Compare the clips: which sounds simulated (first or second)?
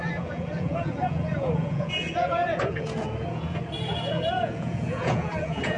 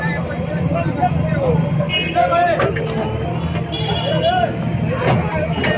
first